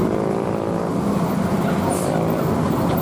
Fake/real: real